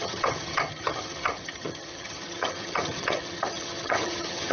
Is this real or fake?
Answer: fake